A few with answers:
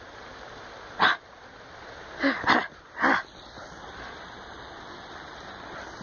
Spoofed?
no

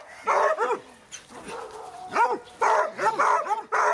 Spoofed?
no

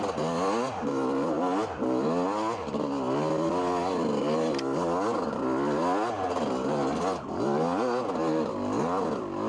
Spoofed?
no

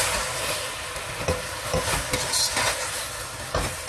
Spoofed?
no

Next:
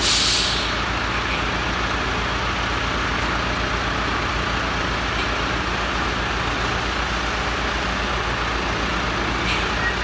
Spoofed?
no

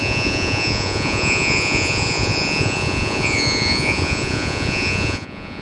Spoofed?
yes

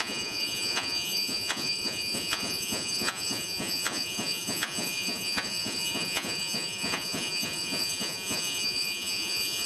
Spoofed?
yes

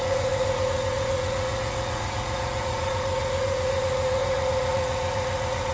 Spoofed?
yes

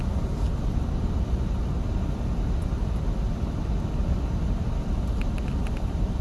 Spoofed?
no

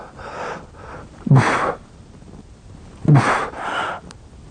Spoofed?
no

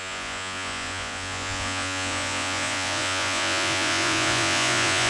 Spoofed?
yes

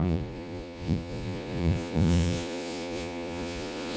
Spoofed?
yes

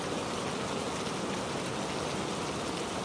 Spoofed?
no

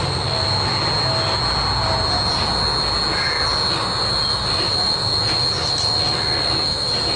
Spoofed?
no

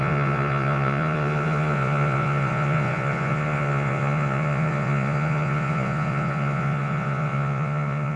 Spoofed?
yes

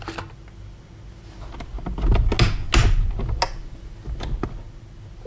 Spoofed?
no